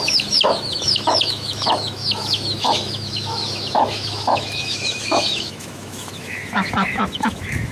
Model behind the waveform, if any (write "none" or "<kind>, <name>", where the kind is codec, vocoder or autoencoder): autoencoder, DAC-VAE